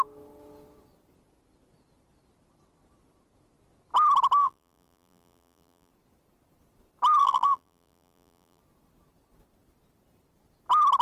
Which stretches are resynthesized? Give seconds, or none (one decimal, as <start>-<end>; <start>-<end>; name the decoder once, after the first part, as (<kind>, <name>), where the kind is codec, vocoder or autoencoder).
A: 4.4-5.9 (vocoder, BigVGAN v2); 7.2-8.6